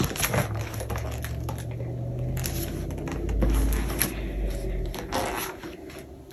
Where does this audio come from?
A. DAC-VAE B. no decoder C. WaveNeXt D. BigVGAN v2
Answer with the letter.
B